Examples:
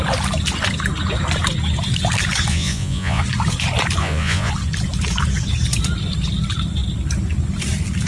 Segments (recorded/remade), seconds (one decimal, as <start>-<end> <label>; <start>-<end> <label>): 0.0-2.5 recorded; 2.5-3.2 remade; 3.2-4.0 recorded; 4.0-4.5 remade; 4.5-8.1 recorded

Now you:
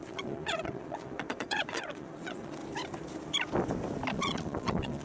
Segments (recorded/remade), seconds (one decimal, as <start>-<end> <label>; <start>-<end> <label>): 0.0-2.6 remade; 2.6-4.1 recorded; 4.1-5.0 remade

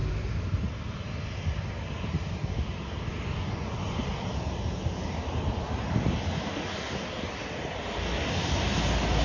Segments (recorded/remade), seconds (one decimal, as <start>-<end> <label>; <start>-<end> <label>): 0.0-9.2 recorded

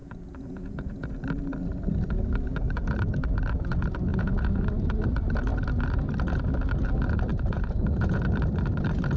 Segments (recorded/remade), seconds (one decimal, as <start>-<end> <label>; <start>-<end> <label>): 0.0-1.2 remade; 1.2-4.1 recorded; 4.1-4.7 remade; 4.7-7.3 recorded; 7.3-8.2 remade; 8.2-9.2 recorded

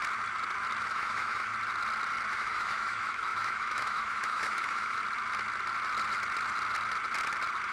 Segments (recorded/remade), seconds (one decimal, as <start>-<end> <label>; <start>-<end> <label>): 0.0-0.9 recorded; 0.9-1.5 remade; 1.5-2.3 recorded; 2.3-5.0 remade; 5.0-7.7 recorded

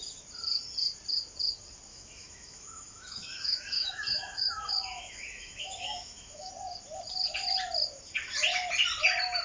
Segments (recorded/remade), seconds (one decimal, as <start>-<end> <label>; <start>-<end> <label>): 0.0-1.9 recorded; 1.9-6.5 remade; 6.5-9.4 recorded

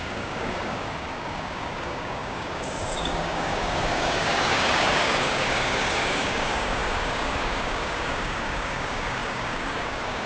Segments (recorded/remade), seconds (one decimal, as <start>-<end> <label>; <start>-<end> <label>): 0.0-10.3 remade